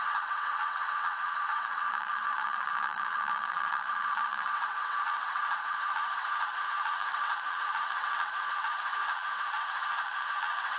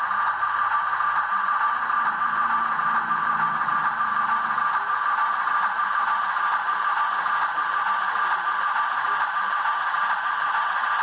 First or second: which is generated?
first